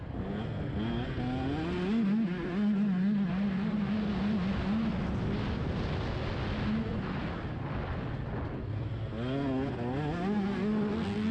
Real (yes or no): yes